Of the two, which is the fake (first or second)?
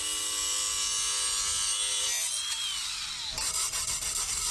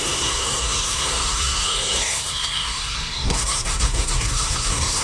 second